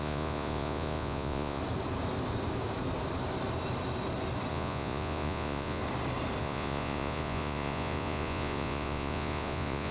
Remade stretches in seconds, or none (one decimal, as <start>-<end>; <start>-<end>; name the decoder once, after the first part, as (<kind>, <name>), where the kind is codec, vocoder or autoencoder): 0.0-1.6 (vocoder, Vocos); 4.5-5.8; 6.4-9.9